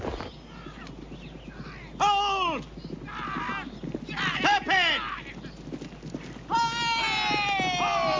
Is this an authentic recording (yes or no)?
yes